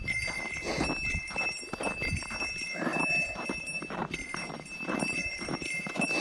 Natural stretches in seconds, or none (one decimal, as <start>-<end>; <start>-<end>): 0.0-6.2